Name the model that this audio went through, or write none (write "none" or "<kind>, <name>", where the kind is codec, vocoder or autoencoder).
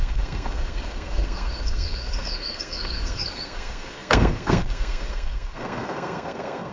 codec, SNAC